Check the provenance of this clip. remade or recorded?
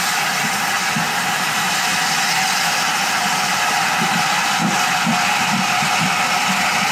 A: recorded